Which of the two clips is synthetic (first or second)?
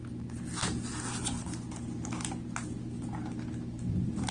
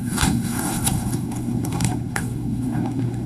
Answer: second